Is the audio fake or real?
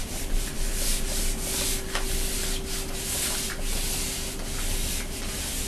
real